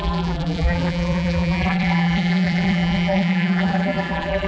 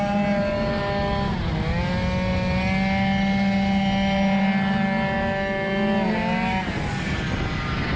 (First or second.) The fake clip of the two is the first